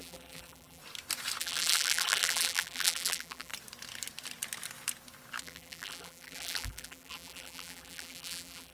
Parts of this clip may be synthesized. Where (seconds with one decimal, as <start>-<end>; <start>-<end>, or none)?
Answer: 0.0-0.8; 1.4-3.5; 5.4-8.7